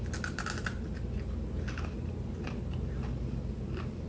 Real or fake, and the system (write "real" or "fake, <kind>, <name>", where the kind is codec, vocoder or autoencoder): real